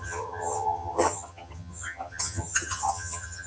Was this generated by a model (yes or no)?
yes